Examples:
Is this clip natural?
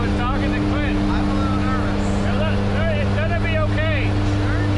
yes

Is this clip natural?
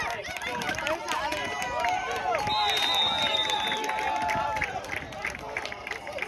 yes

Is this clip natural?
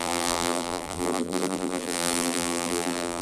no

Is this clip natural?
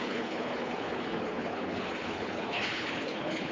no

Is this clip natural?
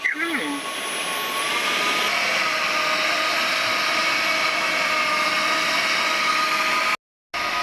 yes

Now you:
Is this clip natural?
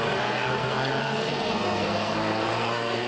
no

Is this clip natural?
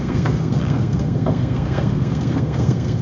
no